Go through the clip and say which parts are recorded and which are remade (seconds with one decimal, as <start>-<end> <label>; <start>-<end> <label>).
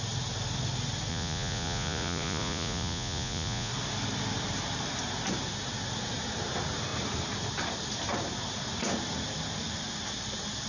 0.0-1.1 recorded; 1.1-3.7 remade; 3.7-10.7 recorded